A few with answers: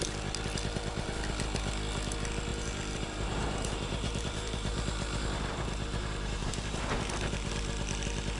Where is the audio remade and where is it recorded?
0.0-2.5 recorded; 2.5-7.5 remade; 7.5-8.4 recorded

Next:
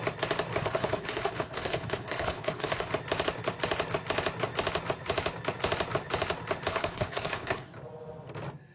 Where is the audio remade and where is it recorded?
0.0-0.6 recorded; 0.6-2.9 remade; 2.9-6.7 recorded; 6.7-7.7 remade; 7.7-8.7 recorded

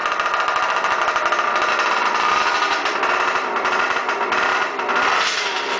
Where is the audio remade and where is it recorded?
0.0-5.8 recorded